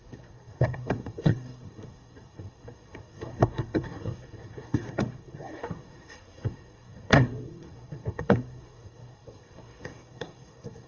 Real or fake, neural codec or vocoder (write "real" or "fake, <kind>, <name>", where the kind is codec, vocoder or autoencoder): fake, codec, SNAC